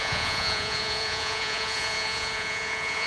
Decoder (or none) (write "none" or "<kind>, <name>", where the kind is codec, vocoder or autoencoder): vocoder, Vocos